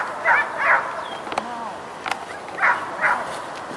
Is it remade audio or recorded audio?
recorded